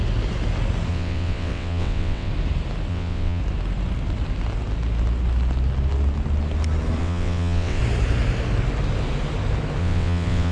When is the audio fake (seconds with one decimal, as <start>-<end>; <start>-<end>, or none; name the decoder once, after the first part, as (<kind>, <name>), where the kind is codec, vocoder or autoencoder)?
0.9-2.3 (vocoder, WaveNeXt); 2.9-3.4; 7.0-7.8; 9.8-10.5